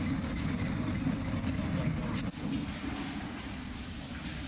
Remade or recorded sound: recorded